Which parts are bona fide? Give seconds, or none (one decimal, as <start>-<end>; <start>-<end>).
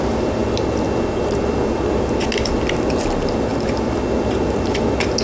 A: 0.0-5.2